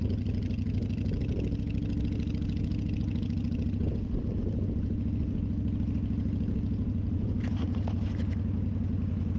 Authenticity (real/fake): real